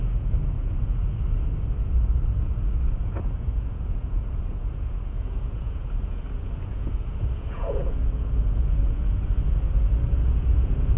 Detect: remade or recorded remade